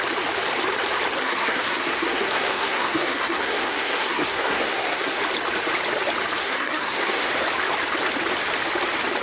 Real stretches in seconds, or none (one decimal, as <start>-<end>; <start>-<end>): 0.0-1.2; 5.2-6.4; 7.3-9.2